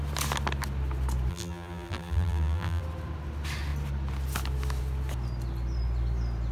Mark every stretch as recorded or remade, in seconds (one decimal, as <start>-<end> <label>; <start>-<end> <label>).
0.0-1.3 recorded; 1.3-2.8 remade; 2.8-6.5 recorded